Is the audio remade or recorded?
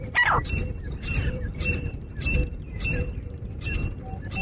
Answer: remade